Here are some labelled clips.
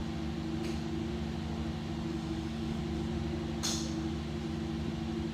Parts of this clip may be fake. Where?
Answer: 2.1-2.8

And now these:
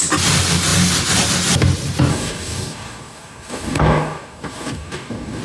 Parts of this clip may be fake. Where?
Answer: 2.1-5.4

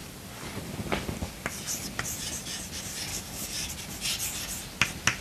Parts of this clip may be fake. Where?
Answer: 3.1-3.7